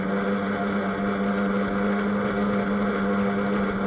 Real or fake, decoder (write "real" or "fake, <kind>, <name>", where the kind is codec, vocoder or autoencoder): real